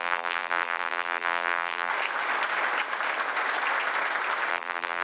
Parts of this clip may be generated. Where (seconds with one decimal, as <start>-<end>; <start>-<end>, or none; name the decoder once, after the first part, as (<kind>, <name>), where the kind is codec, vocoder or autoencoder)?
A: 0.0-1.9 (vocoder, BigVGAN v2); 4.5-5.0